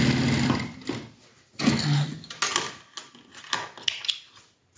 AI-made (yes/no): no